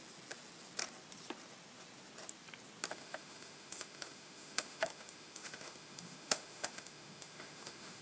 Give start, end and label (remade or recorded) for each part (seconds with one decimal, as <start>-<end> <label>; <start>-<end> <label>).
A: 0.0-2.9 recorded; 2.9-8.0 remade